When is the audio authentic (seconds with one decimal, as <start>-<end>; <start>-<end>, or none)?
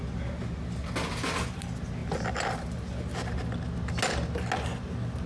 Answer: 0.0-5.3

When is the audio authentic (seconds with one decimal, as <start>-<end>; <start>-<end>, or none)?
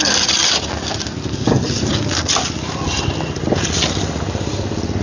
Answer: 0.0-5.0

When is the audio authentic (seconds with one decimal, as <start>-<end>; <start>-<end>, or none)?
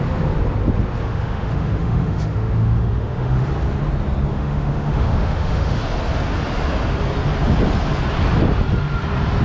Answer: 0.0-1.0; 3.4-4.3; 5.8-9.4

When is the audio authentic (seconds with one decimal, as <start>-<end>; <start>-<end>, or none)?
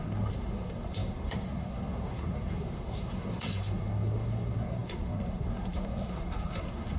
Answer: none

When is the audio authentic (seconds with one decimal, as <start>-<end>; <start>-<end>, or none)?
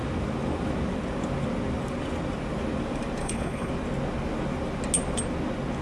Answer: 0.0-3.2; 3.7-5.8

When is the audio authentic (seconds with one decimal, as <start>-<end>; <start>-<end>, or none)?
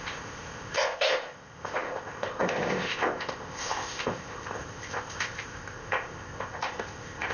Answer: none